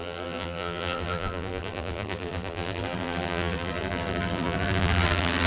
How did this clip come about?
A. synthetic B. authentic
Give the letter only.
A